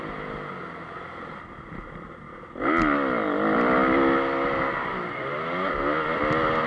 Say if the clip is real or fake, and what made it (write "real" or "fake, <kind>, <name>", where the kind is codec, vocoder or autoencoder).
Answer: real